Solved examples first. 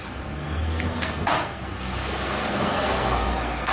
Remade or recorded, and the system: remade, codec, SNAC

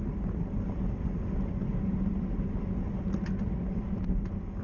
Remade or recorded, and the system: recorded